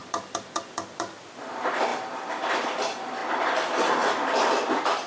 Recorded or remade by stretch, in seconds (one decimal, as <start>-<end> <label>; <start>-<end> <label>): 0.0-5.1 remade